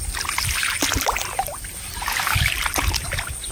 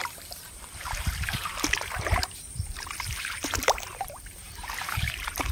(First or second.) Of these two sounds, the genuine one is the first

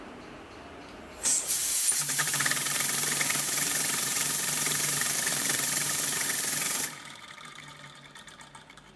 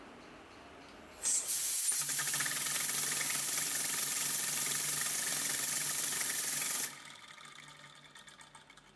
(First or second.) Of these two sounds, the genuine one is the second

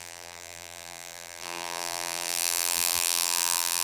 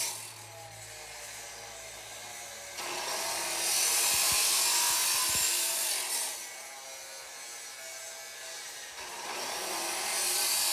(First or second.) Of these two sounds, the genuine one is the second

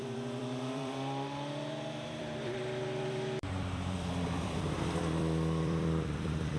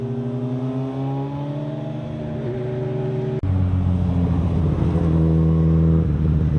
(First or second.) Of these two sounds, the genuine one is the second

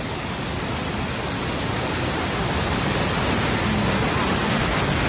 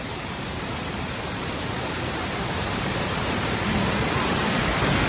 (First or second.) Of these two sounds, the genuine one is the first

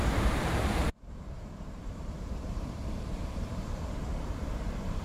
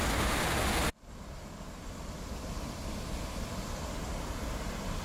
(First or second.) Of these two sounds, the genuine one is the second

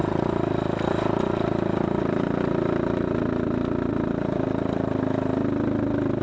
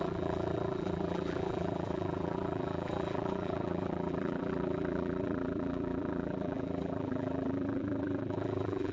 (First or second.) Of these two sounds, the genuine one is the first